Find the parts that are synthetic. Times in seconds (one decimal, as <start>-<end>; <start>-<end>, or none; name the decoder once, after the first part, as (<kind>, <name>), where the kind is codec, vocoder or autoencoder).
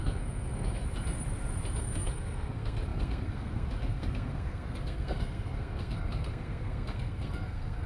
0.0-0.8 (codec, SNAC); 1.8-7.9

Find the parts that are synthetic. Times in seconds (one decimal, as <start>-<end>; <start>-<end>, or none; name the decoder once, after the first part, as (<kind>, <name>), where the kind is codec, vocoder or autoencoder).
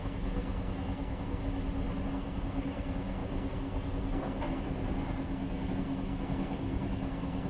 0.0-1.4 (codec, SNAC); 2.1-7.5